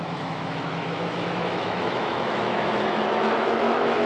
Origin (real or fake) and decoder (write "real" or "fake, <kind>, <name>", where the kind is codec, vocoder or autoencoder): fake, autoencoder, DAC-VAE